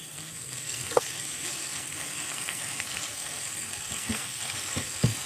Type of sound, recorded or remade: remade